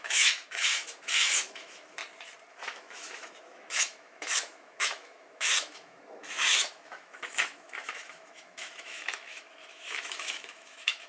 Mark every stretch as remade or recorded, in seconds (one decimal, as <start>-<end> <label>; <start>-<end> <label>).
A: 0.0-2.0 remade; 2.0-2.5 recorded; 2.5-11.1 remade